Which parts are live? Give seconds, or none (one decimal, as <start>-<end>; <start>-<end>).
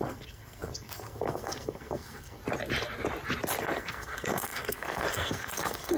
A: 2.4-3.6